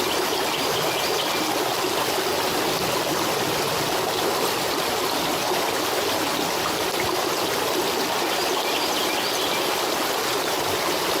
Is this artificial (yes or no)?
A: no